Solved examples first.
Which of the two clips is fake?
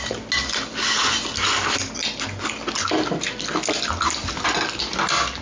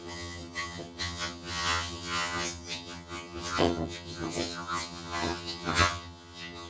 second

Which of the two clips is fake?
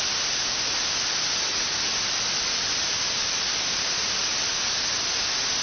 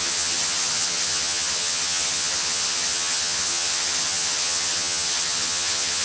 second